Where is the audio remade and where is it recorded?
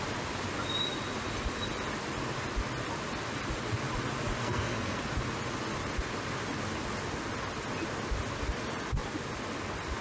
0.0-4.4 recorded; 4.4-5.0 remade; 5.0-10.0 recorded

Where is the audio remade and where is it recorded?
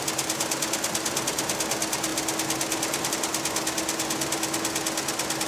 0.0-5.5 recorded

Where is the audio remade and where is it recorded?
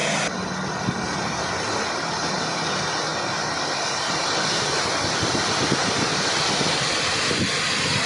0.0-8.1 recorded